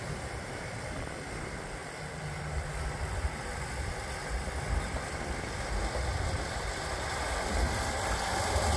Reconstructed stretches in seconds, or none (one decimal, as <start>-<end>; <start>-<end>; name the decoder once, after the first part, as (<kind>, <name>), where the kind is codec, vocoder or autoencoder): 1.8-3.6 (vocoder, BigVGAN v2)